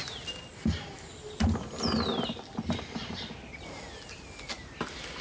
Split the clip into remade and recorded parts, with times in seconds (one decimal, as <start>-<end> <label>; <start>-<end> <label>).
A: 0.0-5.2 recorded